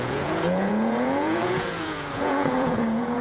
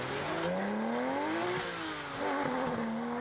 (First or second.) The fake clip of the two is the first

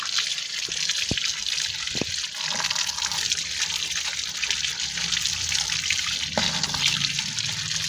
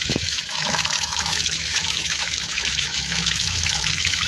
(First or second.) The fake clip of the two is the second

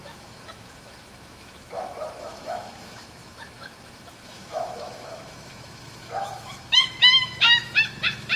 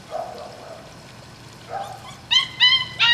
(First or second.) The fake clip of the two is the first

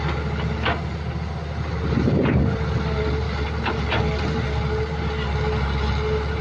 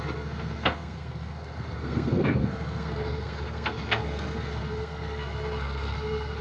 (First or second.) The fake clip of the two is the second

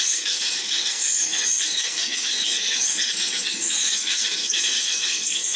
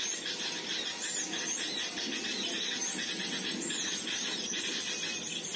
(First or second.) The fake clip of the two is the first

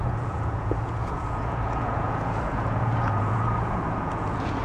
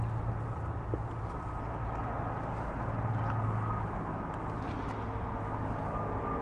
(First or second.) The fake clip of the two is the first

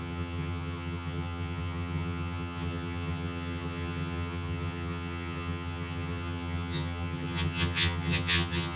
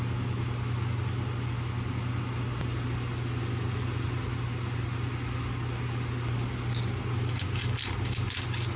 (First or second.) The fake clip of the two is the first